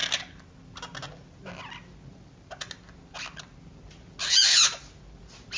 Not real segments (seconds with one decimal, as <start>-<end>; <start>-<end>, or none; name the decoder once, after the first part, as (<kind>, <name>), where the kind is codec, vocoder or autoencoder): none